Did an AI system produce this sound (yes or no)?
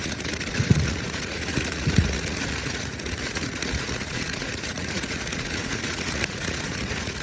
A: yes